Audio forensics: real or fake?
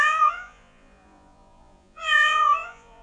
fake